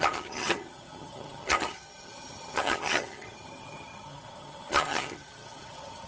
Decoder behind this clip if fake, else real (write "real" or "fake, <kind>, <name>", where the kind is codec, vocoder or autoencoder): fake, vocoder, HiFi-GAN